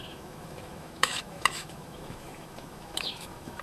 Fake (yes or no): yes